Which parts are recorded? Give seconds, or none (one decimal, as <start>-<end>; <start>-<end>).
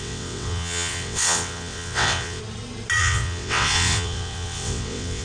2.4-3.0